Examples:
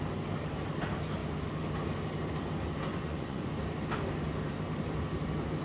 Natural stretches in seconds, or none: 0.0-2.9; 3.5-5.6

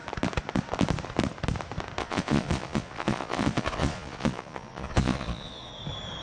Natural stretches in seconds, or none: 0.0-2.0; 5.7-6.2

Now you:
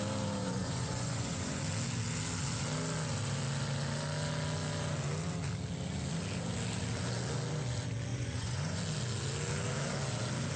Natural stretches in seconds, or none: 0.0-0.4; 1.6-8.1; 8.8-10.6